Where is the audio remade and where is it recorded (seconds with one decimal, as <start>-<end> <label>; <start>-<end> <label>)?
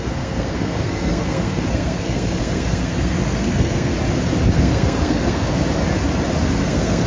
0.0-3.9 remade; 3.9-4.5 recorded; 4.5-5.6 remade; 5.6-6.6 recorded; 6.6-7.1 remade